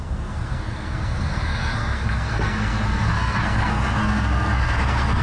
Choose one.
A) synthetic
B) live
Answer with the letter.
A